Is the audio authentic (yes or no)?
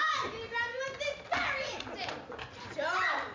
yes